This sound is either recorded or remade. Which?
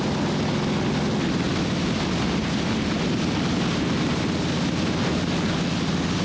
recorded